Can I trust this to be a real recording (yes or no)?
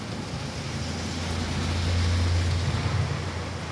yes